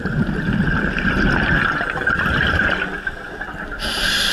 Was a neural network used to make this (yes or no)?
no